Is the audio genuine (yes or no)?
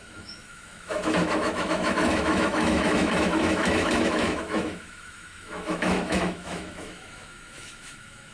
no